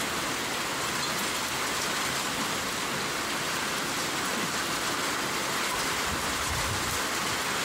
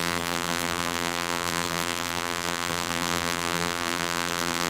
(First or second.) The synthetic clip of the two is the second